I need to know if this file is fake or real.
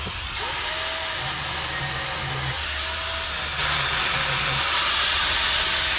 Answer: real